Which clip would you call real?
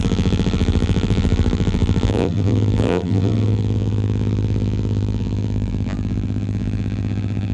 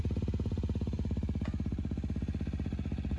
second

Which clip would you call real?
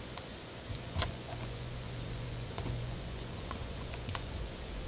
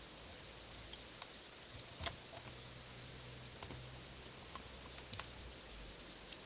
second